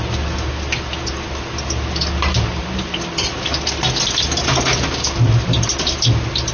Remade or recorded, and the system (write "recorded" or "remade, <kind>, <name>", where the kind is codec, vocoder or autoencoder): recorded